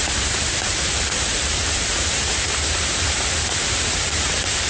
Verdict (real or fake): fake